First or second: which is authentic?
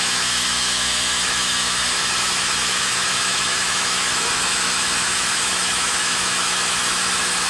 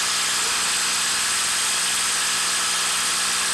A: second